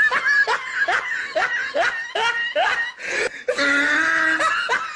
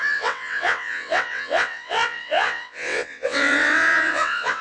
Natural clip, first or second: first